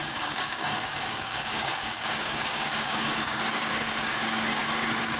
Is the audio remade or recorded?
remade